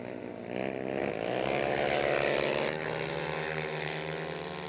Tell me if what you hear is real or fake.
real